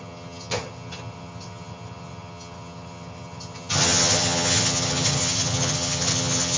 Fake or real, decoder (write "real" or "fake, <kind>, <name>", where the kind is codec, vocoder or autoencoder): fake, vocoder, HiFi-GAN